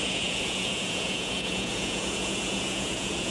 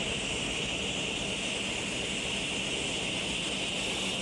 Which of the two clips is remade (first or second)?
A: first